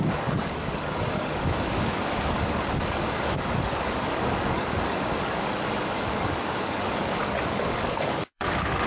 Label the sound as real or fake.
fake